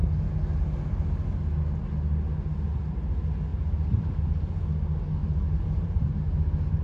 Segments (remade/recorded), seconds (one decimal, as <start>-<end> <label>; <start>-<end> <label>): 0.0-5.2 recorded; 5.2-6.2 remade; 6.2-6.8 recorded